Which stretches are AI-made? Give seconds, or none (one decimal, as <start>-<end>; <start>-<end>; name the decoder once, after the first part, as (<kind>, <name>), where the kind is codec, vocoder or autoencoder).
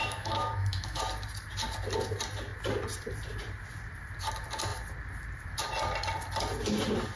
0.0-1.0 (autoencoder, DAC-VAE)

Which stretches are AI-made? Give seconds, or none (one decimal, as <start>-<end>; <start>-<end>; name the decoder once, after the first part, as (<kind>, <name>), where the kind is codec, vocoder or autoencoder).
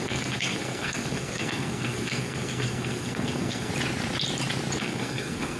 0.0-3.7 (codec, SNAC); 4.8-5.6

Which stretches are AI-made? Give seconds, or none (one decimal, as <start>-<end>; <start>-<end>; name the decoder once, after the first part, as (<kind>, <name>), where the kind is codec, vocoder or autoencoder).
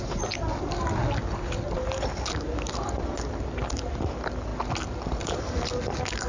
none